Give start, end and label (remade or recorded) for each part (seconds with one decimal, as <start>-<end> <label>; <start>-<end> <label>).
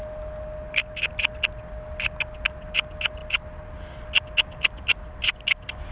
0.0-5.9 recorded